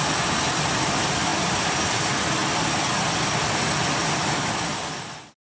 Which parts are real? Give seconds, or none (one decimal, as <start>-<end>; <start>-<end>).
0.0-5.5